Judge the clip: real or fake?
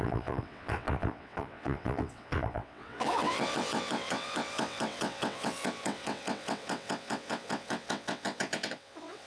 fake